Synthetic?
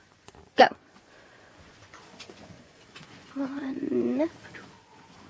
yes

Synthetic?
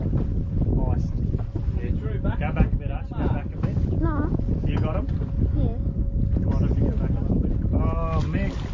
no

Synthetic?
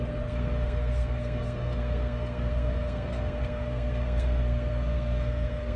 yes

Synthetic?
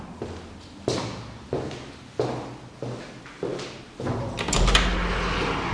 no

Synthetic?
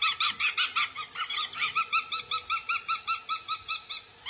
no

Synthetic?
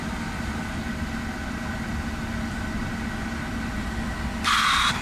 no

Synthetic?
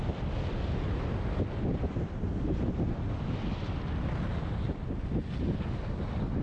no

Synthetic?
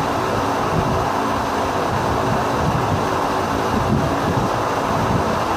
no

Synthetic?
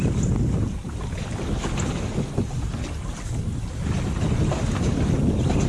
no